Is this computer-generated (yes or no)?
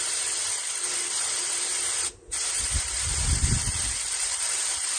no